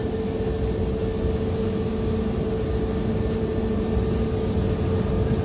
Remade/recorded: recorded